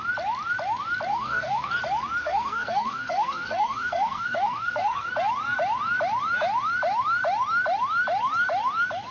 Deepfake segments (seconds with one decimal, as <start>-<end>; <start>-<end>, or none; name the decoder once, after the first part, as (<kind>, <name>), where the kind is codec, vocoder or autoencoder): 1.1-1.7 (codec, SNAC); 2.2-5.1